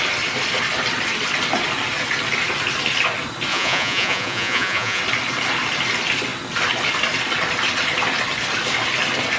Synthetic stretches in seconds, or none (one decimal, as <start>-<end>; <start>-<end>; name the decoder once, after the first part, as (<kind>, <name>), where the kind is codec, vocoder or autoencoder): 3.5-5.0 (vocoder, Vocos)